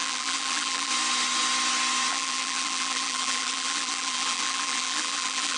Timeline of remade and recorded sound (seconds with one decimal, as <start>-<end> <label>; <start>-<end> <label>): 0.0-0.9 remade; 0.9-2.1 recorded; 2.1-5.6 remade